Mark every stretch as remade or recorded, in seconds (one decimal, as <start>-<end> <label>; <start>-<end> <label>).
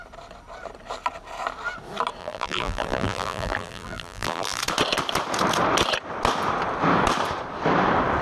0.0-2.2 recorded; 2.2-4.6 remade; 4.6-8.2 recorded